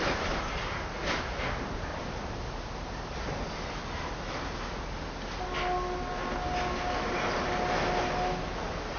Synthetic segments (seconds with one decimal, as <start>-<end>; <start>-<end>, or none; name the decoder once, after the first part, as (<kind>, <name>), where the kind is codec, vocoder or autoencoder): 1.9-4.1 (vocoder, BigVGAN v2)